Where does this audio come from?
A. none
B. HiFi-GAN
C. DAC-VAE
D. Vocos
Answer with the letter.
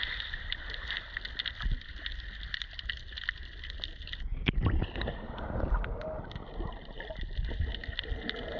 A